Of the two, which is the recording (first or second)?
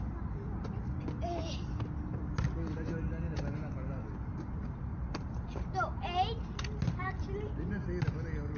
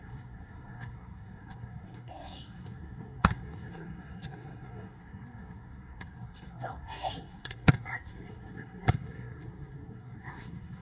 first